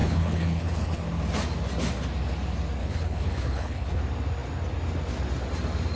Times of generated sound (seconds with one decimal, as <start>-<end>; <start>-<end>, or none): 0.0-1.0; 2.8-4.0